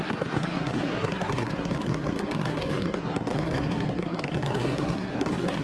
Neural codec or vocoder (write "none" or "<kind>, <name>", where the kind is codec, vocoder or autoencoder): codec, SNAC